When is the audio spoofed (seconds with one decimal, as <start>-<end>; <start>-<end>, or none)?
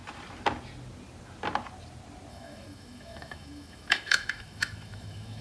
2.3-5.4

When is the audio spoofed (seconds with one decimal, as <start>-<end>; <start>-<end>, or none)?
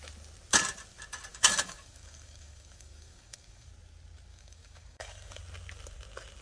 1.3-3.7; 4.3-5.4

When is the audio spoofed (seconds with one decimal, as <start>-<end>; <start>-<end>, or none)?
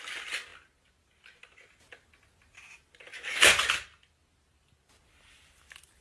none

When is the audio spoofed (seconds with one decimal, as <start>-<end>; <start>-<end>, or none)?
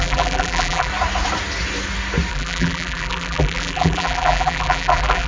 0.0-0.9; 2.3-5.3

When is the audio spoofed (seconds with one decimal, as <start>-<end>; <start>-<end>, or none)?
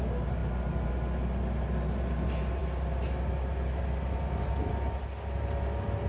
none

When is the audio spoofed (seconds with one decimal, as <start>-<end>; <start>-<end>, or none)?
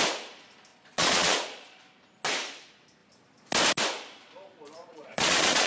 0.7-1.8; 4.8-5.7